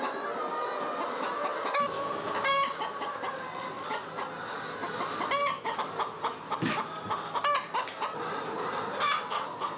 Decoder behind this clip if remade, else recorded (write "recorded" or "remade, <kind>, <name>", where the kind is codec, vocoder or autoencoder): recorded